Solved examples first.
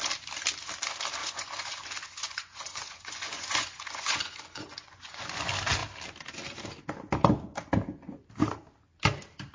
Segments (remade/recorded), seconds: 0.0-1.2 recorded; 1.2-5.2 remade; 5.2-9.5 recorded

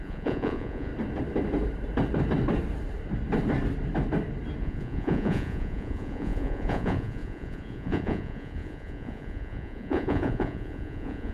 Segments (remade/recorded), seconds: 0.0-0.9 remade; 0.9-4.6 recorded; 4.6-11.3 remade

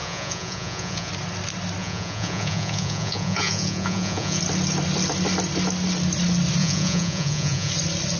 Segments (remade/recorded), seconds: 0.0-1.1 remade; 1.1-1.8 recorded; 1.8-4.4 remade; 4.4-6.6 recorded; 6.6-7.7 remade; 7.7-8.2 recorded

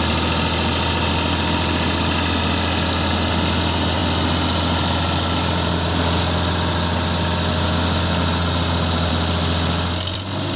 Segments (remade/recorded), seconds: 0.0-10.6 recorded